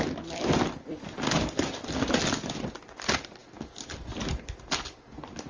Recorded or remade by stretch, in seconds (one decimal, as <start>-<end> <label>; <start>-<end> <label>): 0.0-5.5 recorded